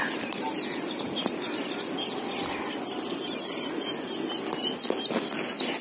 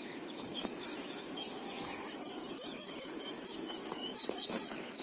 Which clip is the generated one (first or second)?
second